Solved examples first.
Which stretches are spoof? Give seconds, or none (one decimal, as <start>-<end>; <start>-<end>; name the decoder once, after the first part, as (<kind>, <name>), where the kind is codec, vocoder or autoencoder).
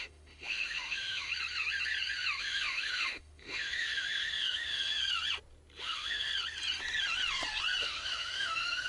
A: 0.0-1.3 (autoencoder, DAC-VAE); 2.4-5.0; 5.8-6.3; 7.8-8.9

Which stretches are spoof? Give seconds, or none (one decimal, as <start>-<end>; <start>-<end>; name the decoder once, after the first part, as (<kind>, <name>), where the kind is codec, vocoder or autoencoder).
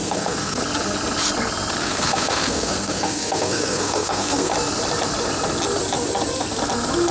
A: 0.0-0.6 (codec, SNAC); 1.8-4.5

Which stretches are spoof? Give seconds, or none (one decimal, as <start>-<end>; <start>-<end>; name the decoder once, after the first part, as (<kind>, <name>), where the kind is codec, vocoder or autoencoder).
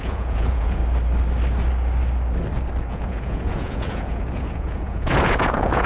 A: 0.0-0.8 (vocoder, Vocos); 2.9-5.9